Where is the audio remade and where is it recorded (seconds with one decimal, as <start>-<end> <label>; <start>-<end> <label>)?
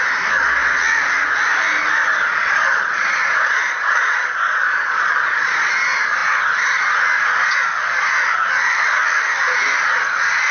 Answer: 0.0-2.3 recorded; 2.3-5.7 remade; 5.7-10.5 recorded